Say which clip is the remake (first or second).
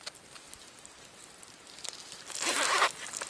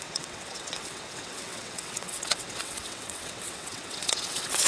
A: second